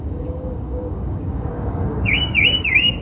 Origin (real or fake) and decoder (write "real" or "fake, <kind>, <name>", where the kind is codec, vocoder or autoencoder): fake, codec, DAC